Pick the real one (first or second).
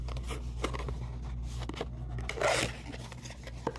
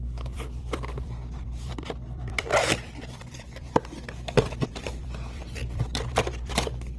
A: first